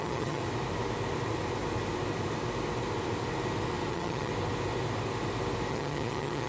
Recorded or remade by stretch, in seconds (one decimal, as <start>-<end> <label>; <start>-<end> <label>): 0.0-0.4 remade; 0.4-3.9 recorded; 3.9-4.3 remade; 4.3-5.7 recorded; 5.7-6.5 remade